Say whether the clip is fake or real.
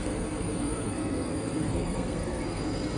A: fake